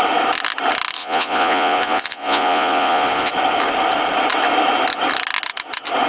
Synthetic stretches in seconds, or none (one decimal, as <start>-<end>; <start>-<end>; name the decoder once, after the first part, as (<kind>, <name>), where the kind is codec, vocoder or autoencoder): 1.0-3.3 (vocoder, Vocos)